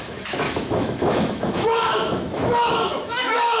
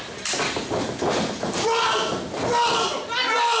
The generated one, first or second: first